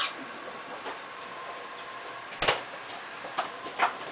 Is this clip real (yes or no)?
yes